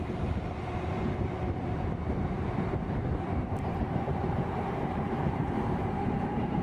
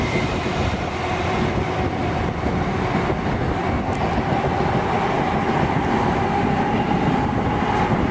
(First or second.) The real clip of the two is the second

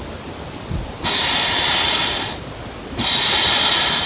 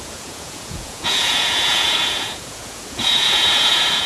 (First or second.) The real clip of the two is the first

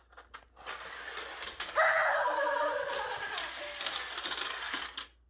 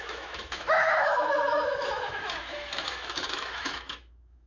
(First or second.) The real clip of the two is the first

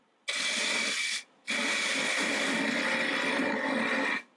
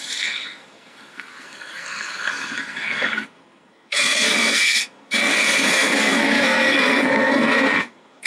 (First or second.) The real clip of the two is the first